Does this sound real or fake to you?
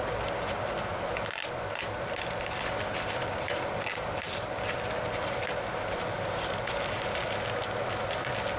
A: real